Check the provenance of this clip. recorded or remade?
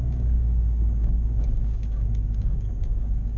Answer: remade